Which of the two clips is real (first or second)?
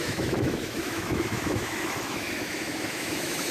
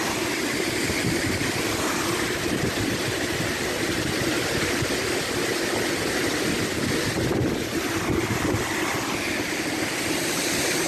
second